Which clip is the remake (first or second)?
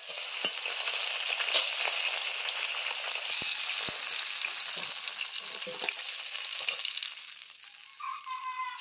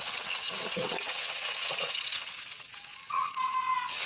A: second